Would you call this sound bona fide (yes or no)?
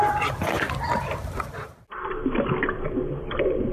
yes